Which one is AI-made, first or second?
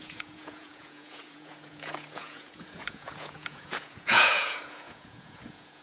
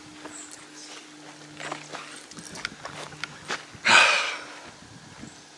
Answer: first